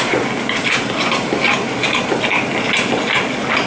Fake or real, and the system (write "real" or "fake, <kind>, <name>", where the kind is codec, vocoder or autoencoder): real